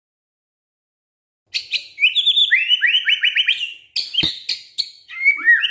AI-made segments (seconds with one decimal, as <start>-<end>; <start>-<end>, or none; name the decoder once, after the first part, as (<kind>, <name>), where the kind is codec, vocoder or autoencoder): 2.4-3.6 (vocoder, BigVGAN v2)